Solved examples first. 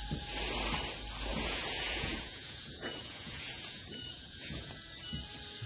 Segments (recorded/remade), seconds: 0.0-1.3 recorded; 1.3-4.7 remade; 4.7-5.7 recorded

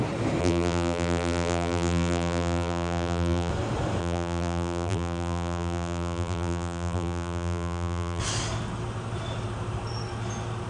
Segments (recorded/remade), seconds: 0.0-0.4 recorded; 0.4-3.5 remade; 3.5-4.0 recorded; 4.0-8.2 remade; 8.2-10.7 recorded

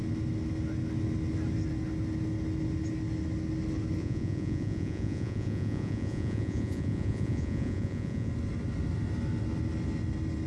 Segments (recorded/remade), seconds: 0.0-4.0 recorded; 4.0-8.3 remade; 8.3-10.5 recorded

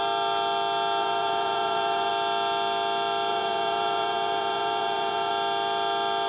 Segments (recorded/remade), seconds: 0.0-1.0 recorded; 1.0-2.1 remade; 2.1-3.3 recorded; 3.3-5.3 remade; 5.3-6.3 recorded

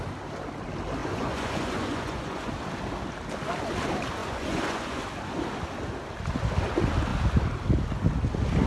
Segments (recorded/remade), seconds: 0.0-1.0 recorded; 1.0-2.5 remade; 2.5-4.2 recorded; 4.2-5.0 remade; 5.0-8.7 recorded

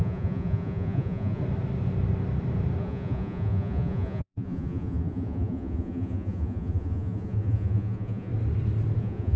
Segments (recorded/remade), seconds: 0.0-1.4 remade; 1.4-2.8 recorded; 2.8-8.3 remade; 8.3-9.0 recorded; 9.0-9.4 remade

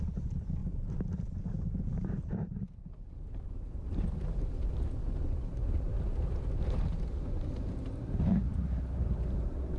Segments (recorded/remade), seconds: 0.0-0.6 recorded; 0.6-4.2 remade; 4.2-5.9 recorded; 5.9-9.8 remade

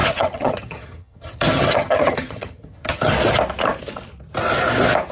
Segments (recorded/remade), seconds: 0.0-3.1 remade; 3.1-5.1 recorded